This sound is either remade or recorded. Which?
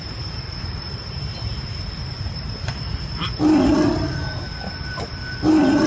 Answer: remade